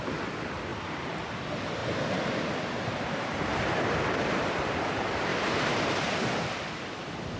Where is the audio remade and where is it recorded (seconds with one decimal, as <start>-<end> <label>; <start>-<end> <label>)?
0.0-0.7 recorded; 0.7-1.4 remade; 1.4-1.8 recorded; 1.8-3.4 remade; 3.4-5.3 recorded; 5.3-5.9 remade; 5.9-7.4 recorded